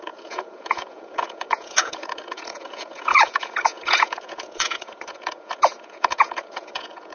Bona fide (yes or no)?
no